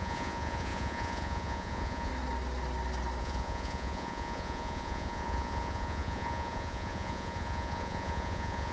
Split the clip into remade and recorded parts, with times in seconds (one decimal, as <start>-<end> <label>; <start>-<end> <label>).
0.0-2.1 remade; 2.1-3.2 recorded; 3.2-8.7 remade